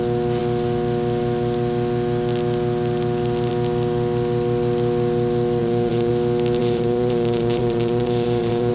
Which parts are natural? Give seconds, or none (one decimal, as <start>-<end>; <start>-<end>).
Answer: 0.0-5.6; 6.1-6.6